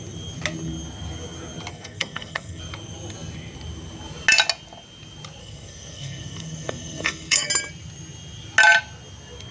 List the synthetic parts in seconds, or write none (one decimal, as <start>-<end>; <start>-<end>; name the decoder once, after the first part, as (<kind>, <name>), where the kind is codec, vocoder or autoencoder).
1.7-2.6 (codec, SNAC); 5.4-7.5